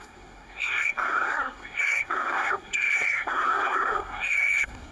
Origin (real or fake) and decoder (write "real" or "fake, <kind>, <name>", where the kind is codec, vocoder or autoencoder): fake, codec, SNAC